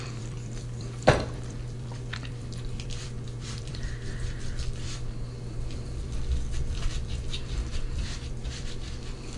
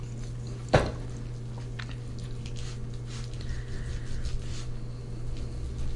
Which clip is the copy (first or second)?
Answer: first